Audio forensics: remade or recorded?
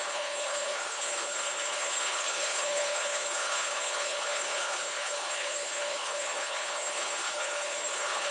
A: remade